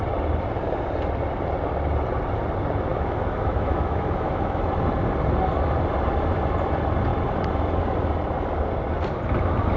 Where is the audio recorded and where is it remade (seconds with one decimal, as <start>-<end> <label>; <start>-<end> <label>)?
0.0-2.9 recorded; 2.9-4.6 remade; 4.6-9.8 recorded